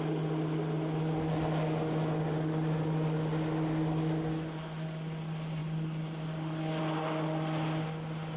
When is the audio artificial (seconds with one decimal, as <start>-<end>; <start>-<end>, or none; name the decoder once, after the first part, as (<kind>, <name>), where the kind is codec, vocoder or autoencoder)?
none